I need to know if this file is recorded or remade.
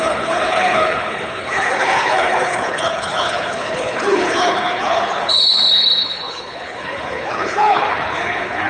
remade